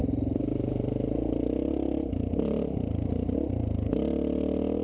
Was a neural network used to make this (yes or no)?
no